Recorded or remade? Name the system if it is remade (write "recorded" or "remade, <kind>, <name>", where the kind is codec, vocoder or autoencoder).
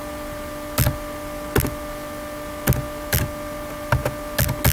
recorded